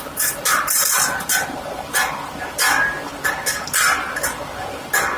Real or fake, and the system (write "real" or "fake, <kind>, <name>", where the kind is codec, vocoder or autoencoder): real